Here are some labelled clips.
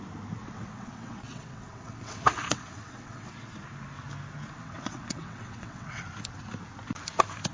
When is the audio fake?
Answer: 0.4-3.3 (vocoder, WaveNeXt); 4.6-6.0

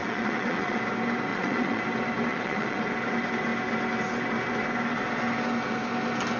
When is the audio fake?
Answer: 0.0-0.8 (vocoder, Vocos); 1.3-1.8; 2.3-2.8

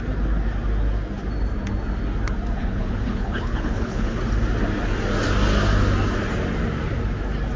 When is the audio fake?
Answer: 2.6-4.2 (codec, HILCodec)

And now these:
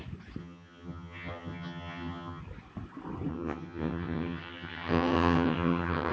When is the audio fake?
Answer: 0.4-2.4 (vocoder, HiFi-GAN); 3.3-6.1

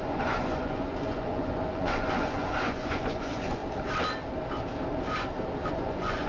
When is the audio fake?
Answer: 0.0-3.6 (vocoder, Vocos); 5.7-6.3